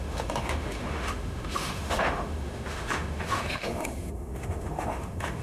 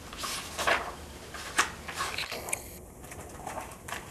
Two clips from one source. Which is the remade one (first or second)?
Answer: first